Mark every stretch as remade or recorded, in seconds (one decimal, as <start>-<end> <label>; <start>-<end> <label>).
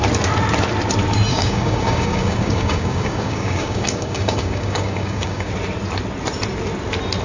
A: 0.0-1.3 recorded; 1.3-5.5 remade; 5.5-7.2 recorded